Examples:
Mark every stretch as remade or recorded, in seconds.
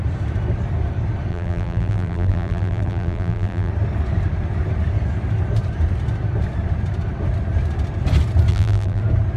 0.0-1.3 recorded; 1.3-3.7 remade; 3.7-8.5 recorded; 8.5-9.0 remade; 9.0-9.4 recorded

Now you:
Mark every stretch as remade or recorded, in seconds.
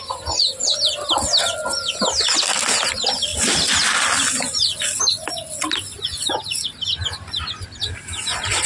0.0-8.7 recorded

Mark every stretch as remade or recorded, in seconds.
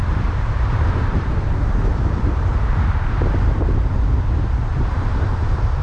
0.0-3.5 remade; 3.5-4.7 recorded; 4.7-5.3 remade; 5.3-5.8 recorded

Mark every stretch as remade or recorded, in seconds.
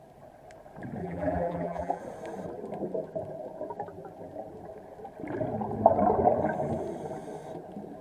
0.0-1.0 recorded; 1.0-2.0 remade; 2.0-8.0 recorded